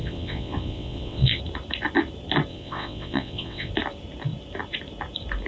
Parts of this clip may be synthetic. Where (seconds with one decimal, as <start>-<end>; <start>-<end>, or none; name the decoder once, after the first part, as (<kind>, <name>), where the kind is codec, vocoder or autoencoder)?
0.0-1.4 (vocoder, WaveNeXt); 2.5-3.7